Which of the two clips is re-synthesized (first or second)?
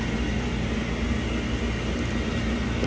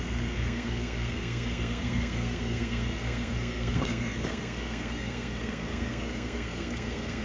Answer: second